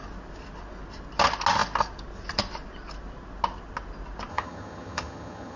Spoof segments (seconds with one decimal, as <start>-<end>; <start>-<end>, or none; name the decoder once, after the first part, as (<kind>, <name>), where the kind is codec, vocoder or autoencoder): 4.3-5.6 (vocoder, HiFi-GAN)